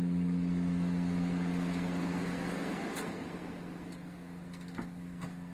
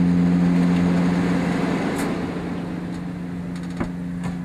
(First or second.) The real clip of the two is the second